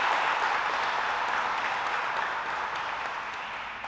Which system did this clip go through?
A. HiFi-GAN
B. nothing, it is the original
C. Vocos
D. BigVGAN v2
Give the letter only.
B